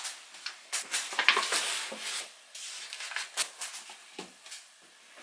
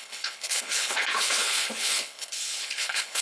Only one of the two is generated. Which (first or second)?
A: second